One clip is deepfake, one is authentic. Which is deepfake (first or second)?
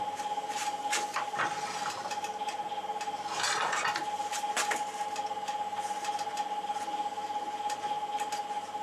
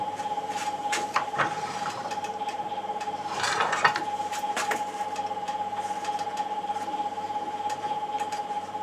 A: second